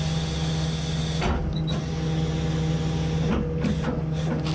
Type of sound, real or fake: real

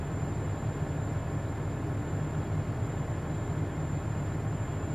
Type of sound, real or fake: real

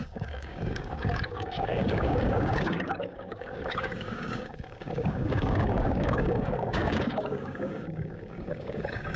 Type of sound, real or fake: fake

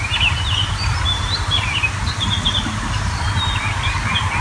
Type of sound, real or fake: real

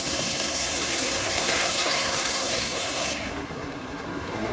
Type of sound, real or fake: fake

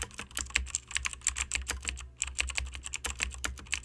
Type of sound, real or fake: real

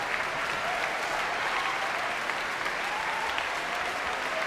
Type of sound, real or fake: real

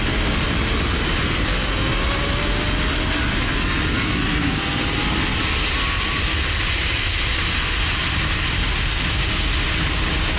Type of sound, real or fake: real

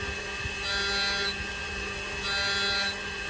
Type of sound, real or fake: real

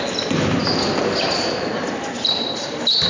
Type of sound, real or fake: real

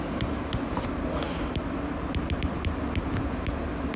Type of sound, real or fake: real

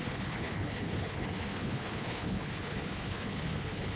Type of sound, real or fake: fake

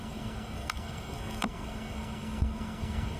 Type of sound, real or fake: fake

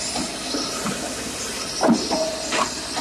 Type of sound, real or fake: real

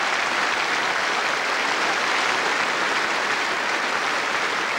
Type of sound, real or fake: real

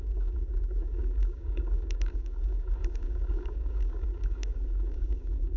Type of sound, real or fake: fake